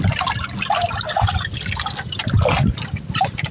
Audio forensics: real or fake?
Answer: real